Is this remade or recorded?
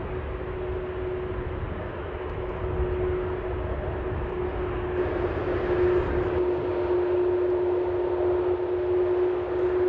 recorded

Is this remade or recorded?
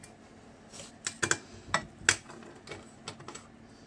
recorded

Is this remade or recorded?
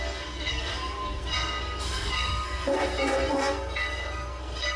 remade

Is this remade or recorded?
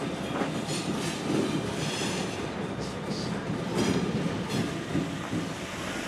recorded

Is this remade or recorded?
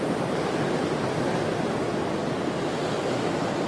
recorded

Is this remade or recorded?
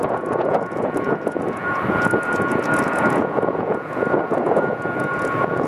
remade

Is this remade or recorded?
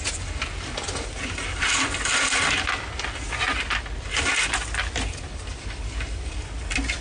recorded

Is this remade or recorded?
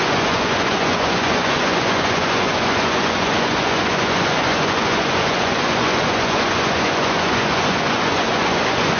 remade